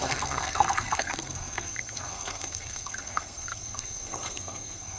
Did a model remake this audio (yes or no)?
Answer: yes